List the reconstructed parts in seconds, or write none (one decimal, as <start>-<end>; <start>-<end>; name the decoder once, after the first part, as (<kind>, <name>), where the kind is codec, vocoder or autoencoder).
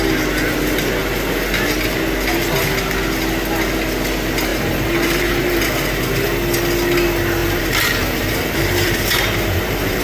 4.5-5.7 (vocoder, BigVGAN v2); 7.4-10.0